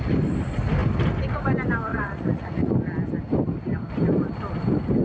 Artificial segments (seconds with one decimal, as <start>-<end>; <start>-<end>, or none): 1.9-2.7